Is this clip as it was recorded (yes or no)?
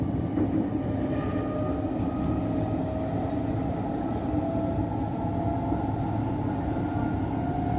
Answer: yes